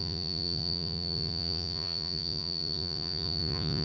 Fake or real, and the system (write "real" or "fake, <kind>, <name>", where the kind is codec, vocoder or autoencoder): fake, vocoder, Vocos